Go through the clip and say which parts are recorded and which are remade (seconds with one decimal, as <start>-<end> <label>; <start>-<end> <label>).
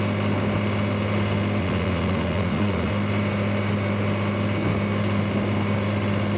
0.0-1.6 recorded; 1.6-2.9 remade; 2.9-6.4 recorded